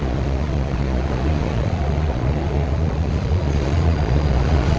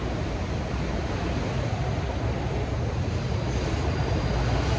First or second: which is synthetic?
first